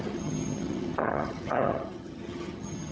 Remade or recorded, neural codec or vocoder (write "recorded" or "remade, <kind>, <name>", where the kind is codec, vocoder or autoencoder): remade, vocoder, HiFi-GAN